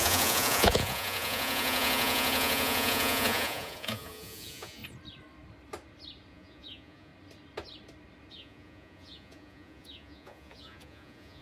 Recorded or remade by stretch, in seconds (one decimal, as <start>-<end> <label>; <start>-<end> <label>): 0.0-4.8 remade; 4.8-6.3 recorded; 6.3-7.1 remade; 7.1-8.3 recorded; 8.3-11.4 remade